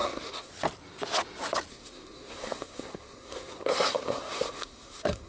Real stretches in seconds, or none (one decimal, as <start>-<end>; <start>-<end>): 0.5-1.7